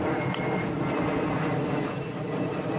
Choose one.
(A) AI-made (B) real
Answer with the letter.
B